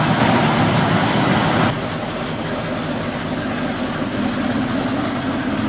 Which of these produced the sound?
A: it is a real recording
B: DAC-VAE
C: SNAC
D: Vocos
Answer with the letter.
A